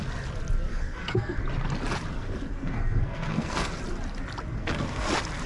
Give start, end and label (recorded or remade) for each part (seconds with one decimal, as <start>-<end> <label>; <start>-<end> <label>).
0.0-0.7 recorded; 0.7-1.4 remade; 1.4-2.1 recorded; 2.1-3.8 remade; 3.8-4.5 recorded; 4.5-5.1 remade; 5.1-5.5 recorded